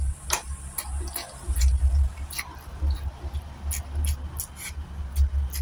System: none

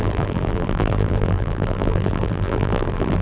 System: vocoder, BigVGAN v2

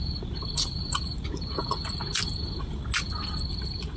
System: none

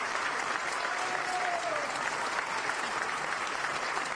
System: vocoder, BigVGAN v2